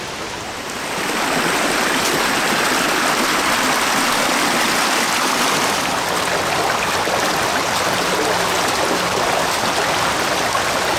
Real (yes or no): yes